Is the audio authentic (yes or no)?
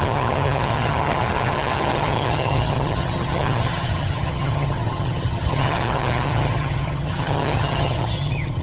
no